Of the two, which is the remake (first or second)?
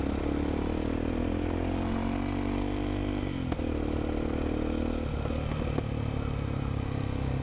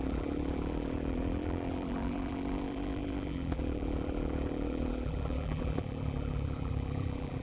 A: second